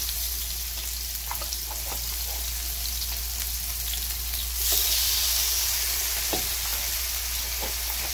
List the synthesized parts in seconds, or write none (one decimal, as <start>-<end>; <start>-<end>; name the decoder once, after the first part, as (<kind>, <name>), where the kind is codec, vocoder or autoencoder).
none